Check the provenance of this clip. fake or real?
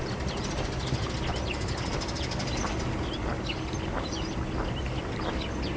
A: real